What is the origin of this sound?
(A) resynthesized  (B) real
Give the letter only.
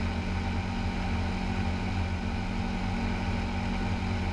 B